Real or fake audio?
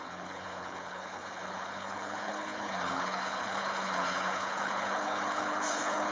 fake